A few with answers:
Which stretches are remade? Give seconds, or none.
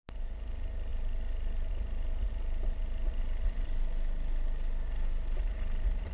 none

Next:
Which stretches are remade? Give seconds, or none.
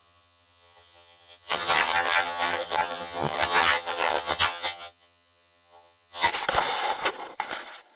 0.0-6.3 (vocoder, HiFi-GAN)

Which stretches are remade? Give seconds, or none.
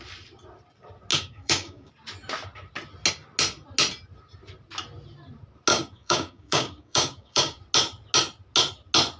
1.1-1.9 (codec, DAC); 5.7-7.6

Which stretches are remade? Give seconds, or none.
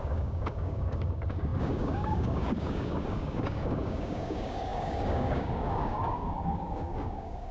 0.0-7.5 (codec, DAC)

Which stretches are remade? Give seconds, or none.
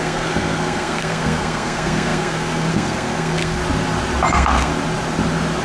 0.0-3.6 (codec, SNAC); 4.3-4.7